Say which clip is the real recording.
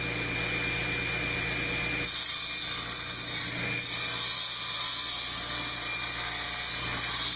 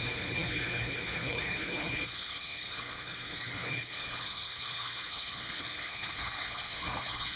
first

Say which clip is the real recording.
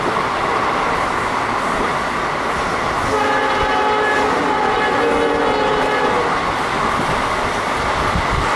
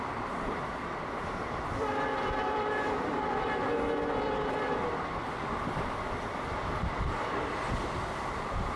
first